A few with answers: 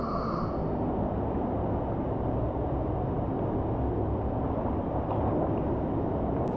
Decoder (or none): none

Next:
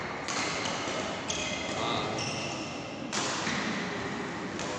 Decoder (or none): none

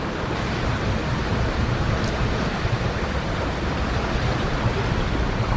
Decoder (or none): none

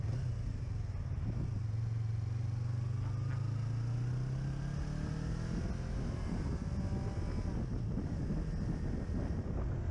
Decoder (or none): none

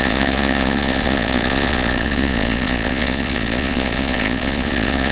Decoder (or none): vocoder, Vocos